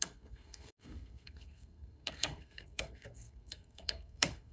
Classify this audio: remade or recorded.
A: remade